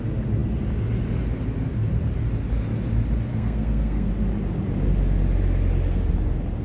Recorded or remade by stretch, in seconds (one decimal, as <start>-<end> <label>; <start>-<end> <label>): 0.0-3.3 recorded; 3.3-4.1 remade; 4.1-6.6 recorded